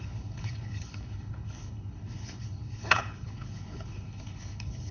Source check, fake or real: fake